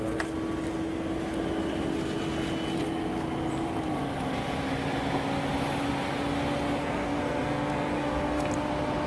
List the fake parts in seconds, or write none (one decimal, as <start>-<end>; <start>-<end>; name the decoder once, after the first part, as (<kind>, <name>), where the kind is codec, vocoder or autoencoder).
6.8-8.5 (codec, SNAC)